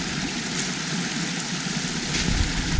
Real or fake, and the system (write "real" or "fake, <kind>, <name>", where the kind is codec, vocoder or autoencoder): real